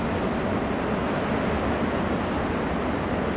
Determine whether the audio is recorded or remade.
recorded